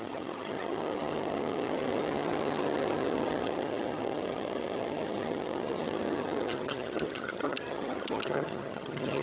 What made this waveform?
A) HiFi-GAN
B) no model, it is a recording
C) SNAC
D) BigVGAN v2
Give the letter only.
A